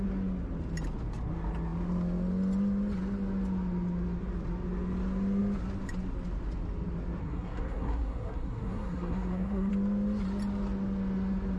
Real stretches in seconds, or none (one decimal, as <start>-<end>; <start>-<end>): 0.0-7.2; 9.7-11.6